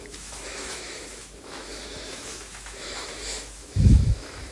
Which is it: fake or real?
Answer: fake